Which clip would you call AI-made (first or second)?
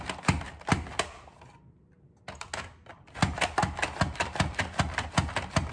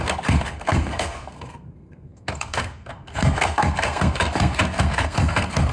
second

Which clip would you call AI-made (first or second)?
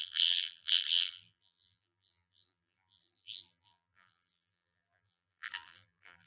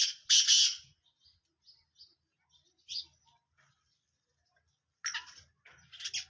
first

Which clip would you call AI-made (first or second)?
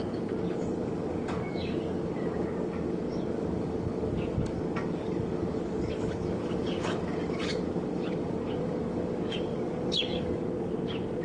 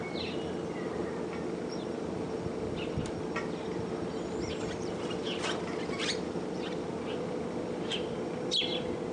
first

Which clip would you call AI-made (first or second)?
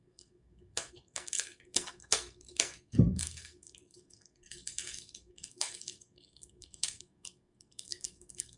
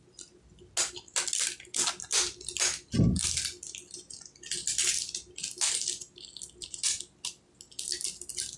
first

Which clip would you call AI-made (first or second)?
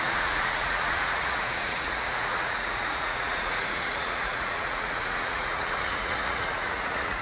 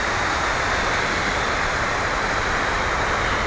first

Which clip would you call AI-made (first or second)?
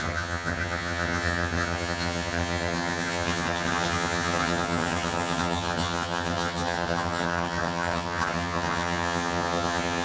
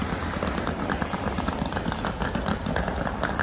first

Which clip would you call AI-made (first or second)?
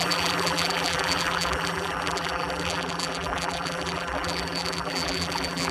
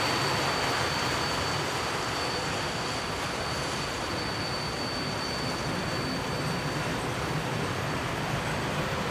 first